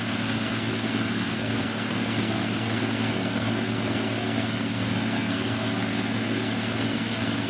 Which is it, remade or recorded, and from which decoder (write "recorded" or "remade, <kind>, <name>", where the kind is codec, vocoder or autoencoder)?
remade, codec, SNAC